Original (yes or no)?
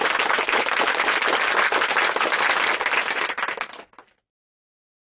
yes